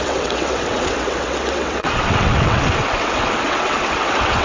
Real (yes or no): no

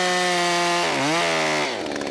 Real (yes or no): yes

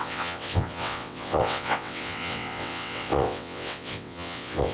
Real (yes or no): no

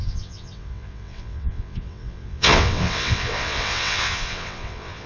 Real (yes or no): no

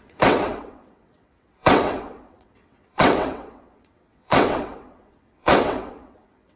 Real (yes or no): no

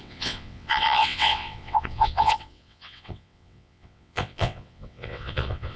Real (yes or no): no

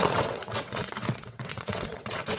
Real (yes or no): no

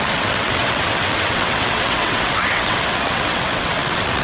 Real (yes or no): no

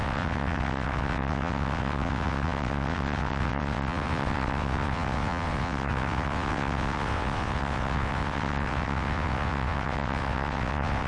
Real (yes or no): no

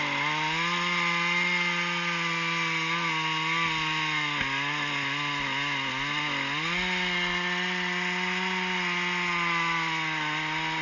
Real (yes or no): yes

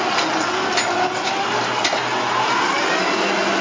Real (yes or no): yes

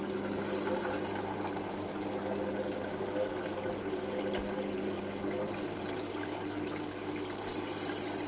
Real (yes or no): yes